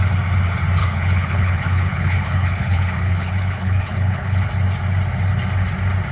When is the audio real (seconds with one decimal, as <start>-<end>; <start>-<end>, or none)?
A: 0.0-0.8; 4.5-6.1